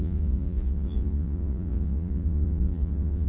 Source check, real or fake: fake